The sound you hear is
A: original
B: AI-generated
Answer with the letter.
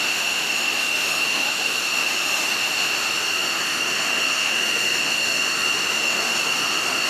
B